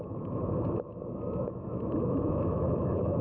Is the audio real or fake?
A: fake